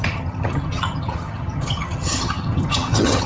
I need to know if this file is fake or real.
fake